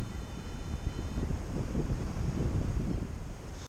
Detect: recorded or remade remade